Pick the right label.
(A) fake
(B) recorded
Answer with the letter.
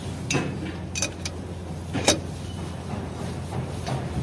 B